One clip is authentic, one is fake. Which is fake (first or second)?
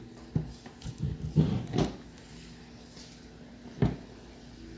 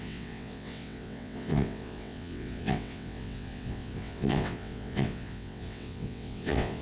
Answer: second